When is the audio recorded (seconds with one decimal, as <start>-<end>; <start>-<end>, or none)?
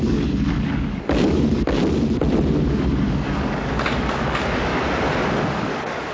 1.8-2.7; 4.7-5.4